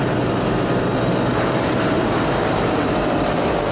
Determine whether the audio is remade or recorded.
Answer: remade